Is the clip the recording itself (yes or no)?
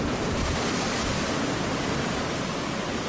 yes